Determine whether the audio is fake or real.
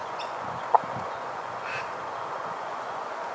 fake